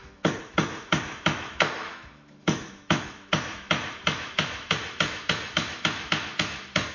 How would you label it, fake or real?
fake